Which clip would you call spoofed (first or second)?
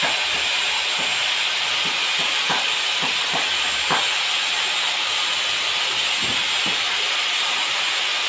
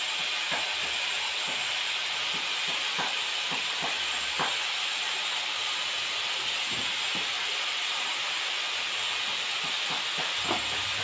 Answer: second